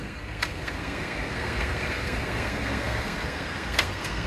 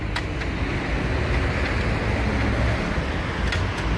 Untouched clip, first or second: second